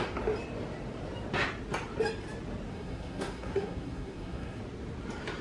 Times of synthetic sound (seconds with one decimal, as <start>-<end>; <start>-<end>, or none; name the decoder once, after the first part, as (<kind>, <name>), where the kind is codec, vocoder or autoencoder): 2.7-4.6 (codec, SNAC)